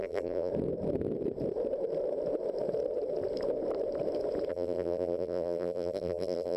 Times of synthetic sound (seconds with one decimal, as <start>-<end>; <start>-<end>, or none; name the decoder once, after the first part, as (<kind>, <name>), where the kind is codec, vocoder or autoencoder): 0.0-0.5 (vocoder, BigVGAN v2); 4.5-6.6